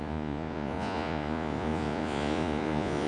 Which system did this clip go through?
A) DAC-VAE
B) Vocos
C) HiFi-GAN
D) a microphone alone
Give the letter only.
B